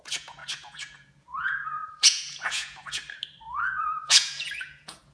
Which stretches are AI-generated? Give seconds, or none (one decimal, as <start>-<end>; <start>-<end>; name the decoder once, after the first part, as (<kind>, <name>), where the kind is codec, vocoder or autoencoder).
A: 0.0-3.0 (vocoder, Vocos); 3.5-5.1